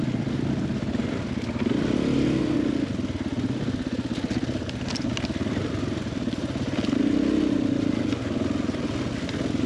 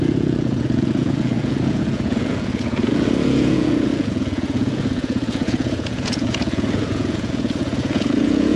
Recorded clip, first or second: first